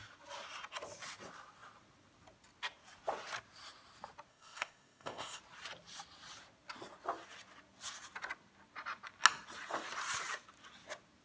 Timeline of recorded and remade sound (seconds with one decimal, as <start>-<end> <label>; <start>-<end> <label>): 0.0-4.3 recorded; 4.3-5.4 remade; 5.4-11.2 recorded